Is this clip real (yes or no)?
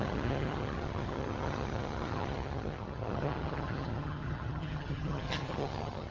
no